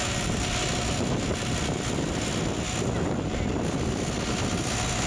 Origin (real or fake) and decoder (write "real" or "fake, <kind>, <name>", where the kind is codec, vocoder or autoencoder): real